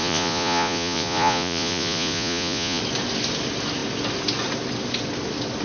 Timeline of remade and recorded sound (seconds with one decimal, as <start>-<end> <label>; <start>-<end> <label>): 0.0-2.8 remade; 2.8-5.6 recorded